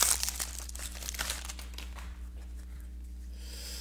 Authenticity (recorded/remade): recorded